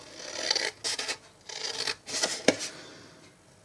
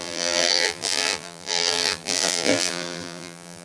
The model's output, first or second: second